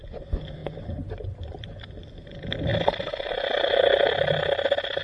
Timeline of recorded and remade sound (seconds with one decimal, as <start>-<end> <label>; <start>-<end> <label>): 0.0-5.0 recorded